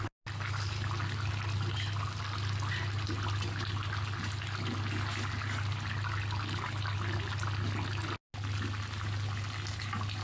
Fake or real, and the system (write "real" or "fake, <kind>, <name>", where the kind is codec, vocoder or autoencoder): real